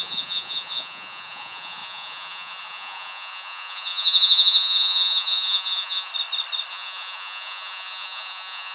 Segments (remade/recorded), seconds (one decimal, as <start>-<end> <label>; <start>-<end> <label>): 0.0-6.1 remade; 6.1-6.7 recorded; 6.7-8.7 remade